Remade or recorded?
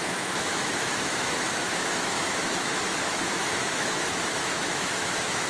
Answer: remade